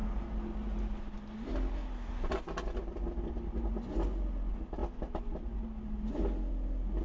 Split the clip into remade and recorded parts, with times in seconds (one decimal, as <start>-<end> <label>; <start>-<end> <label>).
0.0-7.0 recorded